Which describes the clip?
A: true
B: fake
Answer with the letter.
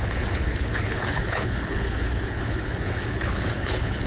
B